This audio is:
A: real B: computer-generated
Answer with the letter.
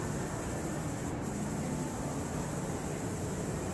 A